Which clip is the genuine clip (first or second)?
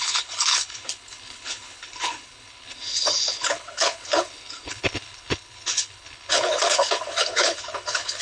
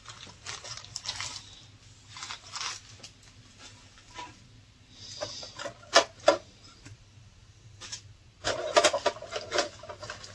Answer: second